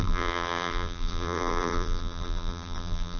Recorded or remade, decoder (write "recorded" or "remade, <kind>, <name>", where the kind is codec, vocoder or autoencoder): remade, vocoder, BigVGAN v2